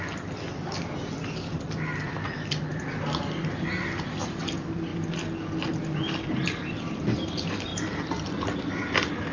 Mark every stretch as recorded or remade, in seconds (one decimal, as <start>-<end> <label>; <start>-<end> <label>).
0.0-9.3 recorded